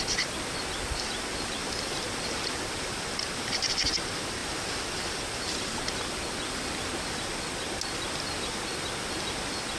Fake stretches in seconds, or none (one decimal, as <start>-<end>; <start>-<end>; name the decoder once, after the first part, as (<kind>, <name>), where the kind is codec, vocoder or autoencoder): 1.6-3.7 (vocoder, BigVGAN v2)